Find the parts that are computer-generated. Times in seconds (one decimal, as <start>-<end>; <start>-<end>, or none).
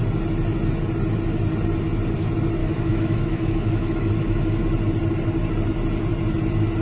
2.6-4.6